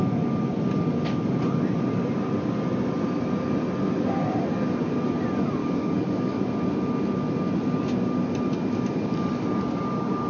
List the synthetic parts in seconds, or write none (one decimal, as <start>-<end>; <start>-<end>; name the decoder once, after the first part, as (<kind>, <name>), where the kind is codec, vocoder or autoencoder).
5.6-6.4 (codec, DAC)